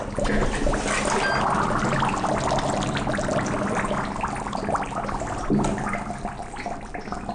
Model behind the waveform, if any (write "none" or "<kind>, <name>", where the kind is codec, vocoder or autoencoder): none